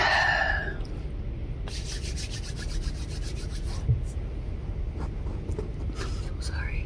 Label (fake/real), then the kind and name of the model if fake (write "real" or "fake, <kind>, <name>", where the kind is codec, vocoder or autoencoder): real